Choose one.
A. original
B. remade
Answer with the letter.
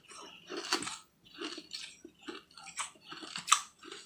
A